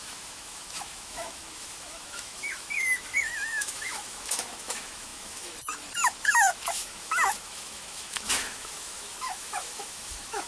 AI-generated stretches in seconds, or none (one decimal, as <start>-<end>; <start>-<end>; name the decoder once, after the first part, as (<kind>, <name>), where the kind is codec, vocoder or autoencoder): 0.0-10.5 (autoencoder, DAC-VAE)

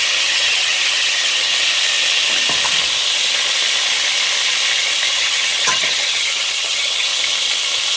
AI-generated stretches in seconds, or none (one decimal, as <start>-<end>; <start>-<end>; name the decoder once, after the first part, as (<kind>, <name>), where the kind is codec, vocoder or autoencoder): 0.0-1.5 (vocoder, HiFi-GAN); 5.1-7.1

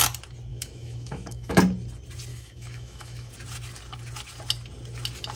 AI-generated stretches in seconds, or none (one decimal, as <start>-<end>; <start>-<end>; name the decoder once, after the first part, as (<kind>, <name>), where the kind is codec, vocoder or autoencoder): 0.5-1.6 (autoencoder, DAC-VAE); 2.3-3.3

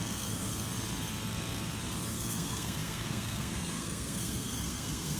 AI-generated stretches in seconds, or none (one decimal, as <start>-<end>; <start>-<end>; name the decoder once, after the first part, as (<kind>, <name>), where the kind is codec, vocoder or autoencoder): 0.0-0.5 (codec, SNAC); 2.1-5.2

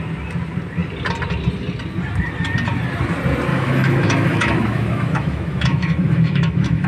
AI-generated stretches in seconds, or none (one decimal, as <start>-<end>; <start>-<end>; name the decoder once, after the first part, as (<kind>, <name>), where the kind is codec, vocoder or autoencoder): 3.5-6.9 (autoencoder, DAC-VAE)

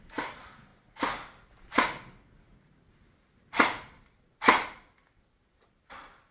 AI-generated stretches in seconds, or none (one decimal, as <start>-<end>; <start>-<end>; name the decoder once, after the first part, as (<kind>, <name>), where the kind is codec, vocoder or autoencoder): none

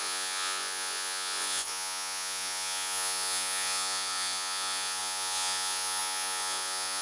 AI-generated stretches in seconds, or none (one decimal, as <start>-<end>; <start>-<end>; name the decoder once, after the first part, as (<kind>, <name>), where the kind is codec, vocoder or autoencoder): 0.0-7.0 (vocoder, Vocos)